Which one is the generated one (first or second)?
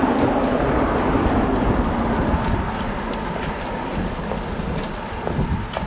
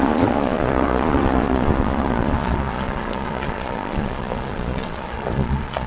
second